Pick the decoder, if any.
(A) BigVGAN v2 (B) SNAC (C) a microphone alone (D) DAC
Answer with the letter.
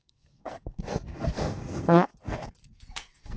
B